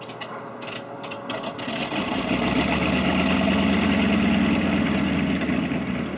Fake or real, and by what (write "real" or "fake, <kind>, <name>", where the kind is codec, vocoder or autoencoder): real